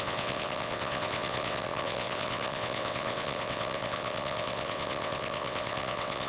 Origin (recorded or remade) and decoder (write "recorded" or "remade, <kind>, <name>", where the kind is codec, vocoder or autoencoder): remade, vocoder, WaveNeXt